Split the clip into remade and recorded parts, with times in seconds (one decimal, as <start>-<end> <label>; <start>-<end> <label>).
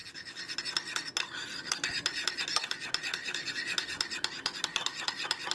0.0-2.2 recorded; 2.2-5.5 remade